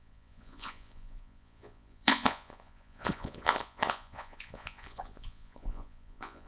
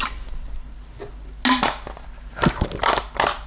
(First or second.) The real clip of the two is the second